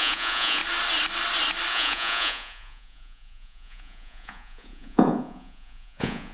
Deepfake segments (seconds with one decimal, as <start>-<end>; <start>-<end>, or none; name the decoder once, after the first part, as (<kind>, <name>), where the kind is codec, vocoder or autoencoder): 0.0-0.6 (vocoder, Vocos); 1.7-6.3